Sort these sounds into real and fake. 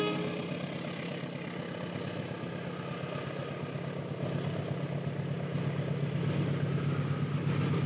real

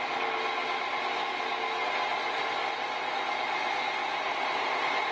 real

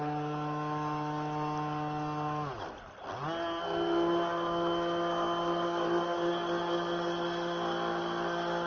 real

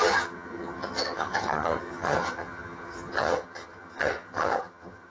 fake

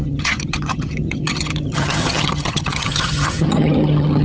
fake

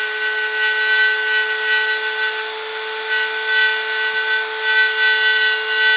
real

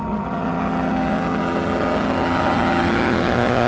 fake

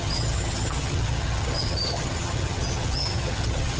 fake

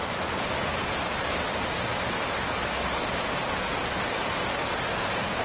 real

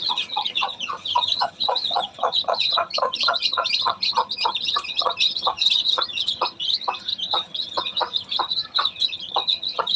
fake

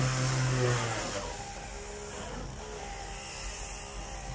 real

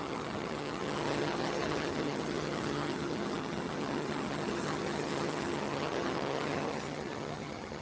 fake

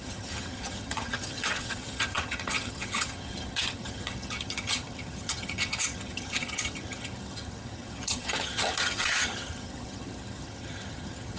fake